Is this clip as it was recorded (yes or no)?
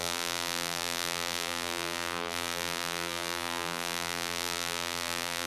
no